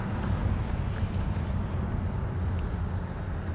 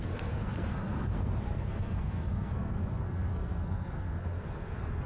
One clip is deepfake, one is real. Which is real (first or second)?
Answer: first